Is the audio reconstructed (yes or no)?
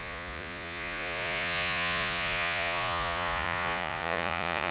yes